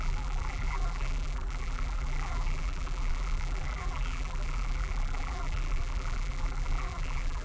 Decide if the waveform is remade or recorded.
remade